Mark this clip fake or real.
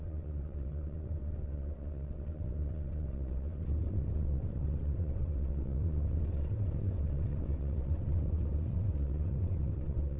fake